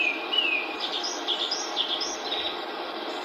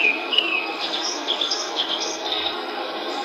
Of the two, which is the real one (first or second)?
first